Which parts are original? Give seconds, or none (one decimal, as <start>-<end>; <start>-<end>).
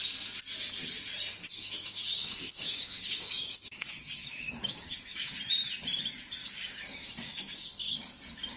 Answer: 0.0-1.5; 5.3-6.4; 8.0-8.6